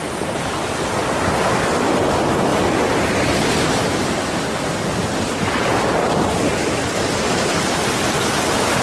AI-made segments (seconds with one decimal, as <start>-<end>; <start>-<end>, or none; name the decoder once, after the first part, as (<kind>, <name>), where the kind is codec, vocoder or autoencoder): none

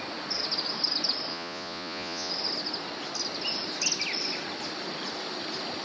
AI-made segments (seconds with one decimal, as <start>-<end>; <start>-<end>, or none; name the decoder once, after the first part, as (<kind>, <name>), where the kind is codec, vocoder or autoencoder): 1.3-2.3 (vocoder, Vocos)

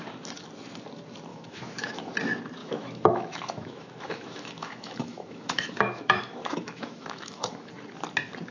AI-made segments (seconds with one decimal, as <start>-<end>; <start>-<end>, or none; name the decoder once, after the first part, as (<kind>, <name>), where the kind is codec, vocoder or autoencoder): 1.3-2.1 (autoencoder, DAC-VAE); 2.6-7.7

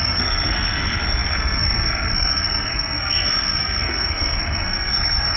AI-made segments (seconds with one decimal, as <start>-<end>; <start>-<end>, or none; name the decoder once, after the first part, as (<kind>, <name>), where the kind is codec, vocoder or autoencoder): 0.0-5.4 (codec, SNAC)

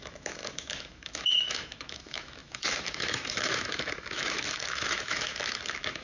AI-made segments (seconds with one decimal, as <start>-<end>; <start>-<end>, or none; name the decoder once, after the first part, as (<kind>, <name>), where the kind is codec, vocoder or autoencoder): 0.0-6.0 (autoencoder, DAC-VAE)

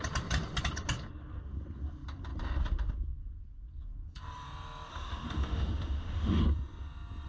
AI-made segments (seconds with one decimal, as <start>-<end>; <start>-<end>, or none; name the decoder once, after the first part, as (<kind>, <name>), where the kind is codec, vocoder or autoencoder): 4.9-6.4 (autoencoder, DAC-VAE)